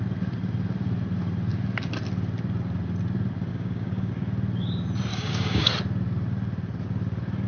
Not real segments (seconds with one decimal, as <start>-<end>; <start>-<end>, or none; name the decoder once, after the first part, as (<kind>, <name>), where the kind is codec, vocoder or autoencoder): 3.5-4.1 (codec, DAC); 5.1-5.7